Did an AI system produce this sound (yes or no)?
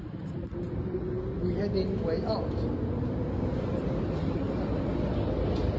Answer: no